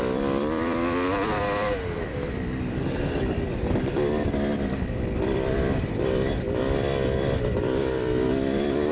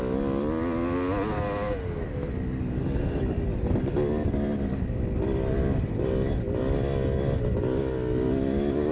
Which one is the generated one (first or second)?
first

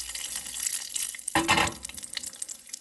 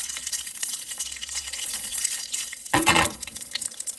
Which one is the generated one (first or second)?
second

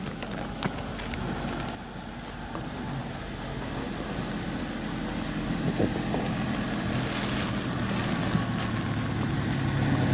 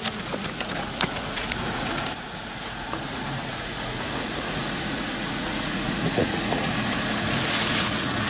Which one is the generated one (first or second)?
second